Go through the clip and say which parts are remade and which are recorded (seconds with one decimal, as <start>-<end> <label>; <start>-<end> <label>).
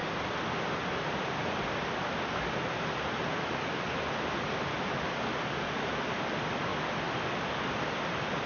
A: 0.0-8.5 recorded